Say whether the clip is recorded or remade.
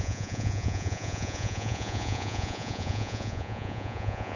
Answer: remade